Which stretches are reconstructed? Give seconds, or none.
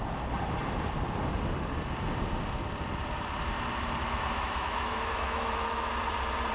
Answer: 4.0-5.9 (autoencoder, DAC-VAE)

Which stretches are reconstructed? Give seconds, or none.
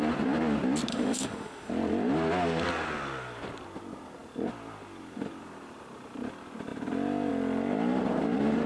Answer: 0.9-1.7 (autoencoder, DAC-VAE)